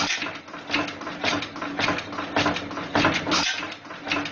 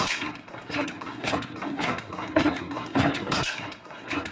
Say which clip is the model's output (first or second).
second